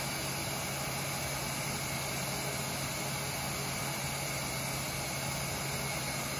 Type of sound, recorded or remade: recorded